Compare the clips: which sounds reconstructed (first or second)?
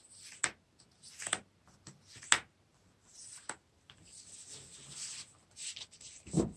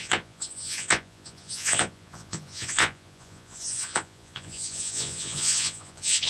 second